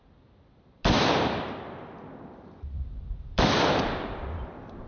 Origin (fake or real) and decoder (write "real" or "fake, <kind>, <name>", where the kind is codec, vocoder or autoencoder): fake, vocoder, BigVGAN v2